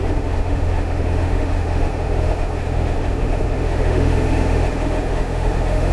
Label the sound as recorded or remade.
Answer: remade